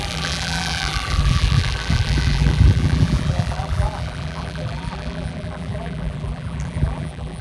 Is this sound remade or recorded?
remade